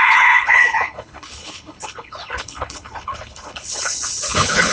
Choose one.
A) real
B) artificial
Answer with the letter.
B